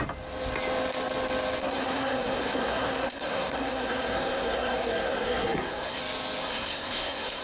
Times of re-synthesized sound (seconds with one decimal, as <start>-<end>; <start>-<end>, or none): 1.6-6.0; 6.4-7.4